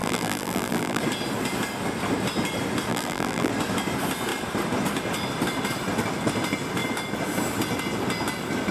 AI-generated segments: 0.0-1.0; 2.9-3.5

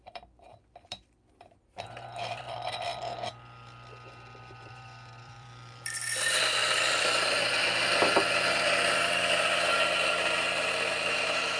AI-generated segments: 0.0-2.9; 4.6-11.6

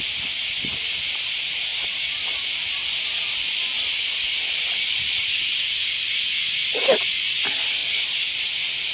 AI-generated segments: 1.7-4.9; 7.8-8.9

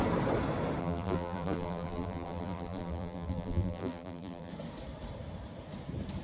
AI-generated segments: 0.8-4.5

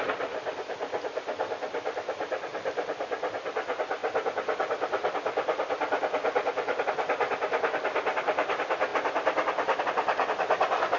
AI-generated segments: none

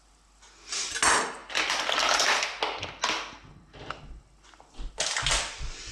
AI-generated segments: none